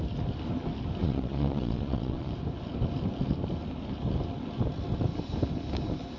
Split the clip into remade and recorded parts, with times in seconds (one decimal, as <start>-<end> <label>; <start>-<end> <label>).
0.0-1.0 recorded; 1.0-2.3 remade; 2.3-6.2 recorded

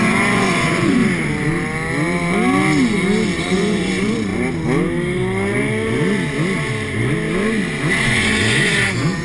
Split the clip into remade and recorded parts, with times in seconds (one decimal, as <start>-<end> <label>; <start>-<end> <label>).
0.0-1.0 remade; 1.0-3.4 recorded; 3.4-4.3 remade; 4.3-7.9 recorded; 7.9-9.2 remade

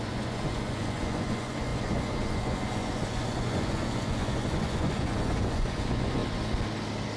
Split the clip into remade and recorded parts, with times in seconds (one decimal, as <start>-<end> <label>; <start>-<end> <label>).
0.0-6.2 remade; 6.2-7.2 recorded

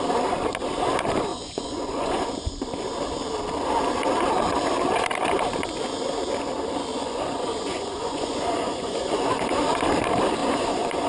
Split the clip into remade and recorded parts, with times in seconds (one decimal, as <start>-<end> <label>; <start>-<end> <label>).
0.0-1.3 recorded; 1.3-2.5 remade; 2.5-6.9 recorded; 6.9-9.6 remade; 9.6-10.4 recorded; 10.4-11.1 remade

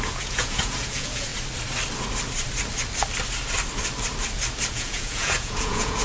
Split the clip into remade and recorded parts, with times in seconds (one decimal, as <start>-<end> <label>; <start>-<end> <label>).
0.0-1.3 remade; 1.3-4.7 recorded; 4.7-6.0 remade